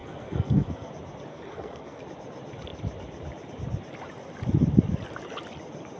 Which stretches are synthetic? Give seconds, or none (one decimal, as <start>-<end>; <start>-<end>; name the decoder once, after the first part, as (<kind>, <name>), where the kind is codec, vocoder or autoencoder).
0.0-0.9 (codec, SNAC); 1.3-2.0